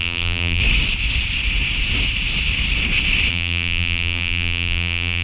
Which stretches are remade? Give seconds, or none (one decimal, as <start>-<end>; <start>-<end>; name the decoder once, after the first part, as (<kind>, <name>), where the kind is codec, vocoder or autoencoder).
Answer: 0.0-0.6 (vocoder, BigVGAN v2); 3.3-5.2